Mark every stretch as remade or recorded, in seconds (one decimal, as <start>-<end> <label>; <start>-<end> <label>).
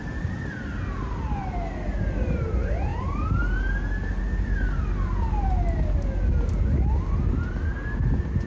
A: 0.0-8.5 recorded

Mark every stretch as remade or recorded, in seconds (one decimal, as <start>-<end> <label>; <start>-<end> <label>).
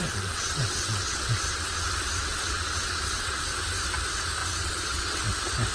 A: 0.0-3.4 remade; 3.4-4.4 recorded; 4.4-5.2 remade; 5.2-5.7 recorded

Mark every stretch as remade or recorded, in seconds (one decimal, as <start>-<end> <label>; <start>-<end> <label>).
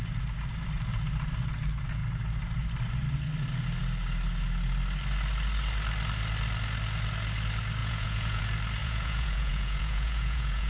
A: 0.0-7.8 recorded; 7.8-8.4 remade; 8.4-8.8 recorded; 8.8-10.7 remade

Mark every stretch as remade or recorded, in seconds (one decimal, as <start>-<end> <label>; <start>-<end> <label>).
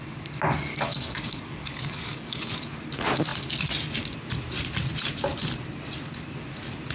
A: 0.0-0.7 recorded; 0.7-2.8 remade; 2.8-6.9 recorded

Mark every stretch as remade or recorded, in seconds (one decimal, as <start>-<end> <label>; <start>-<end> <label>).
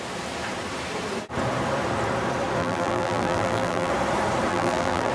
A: 0.0-2.6 recorded; 2.6-3.9 remade; 3.9-4.5 recorded; 4.5-5.1 remade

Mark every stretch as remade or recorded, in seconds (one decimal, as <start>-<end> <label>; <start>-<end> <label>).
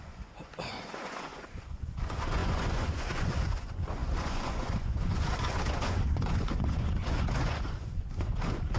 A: 0.0-8.8 remade